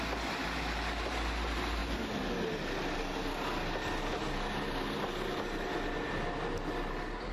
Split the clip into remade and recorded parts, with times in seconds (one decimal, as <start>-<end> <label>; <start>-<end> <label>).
0.0-7.3 recorded